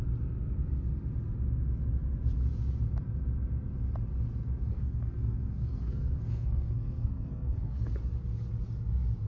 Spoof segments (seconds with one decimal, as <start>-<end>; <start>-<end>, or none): 4.7-7.9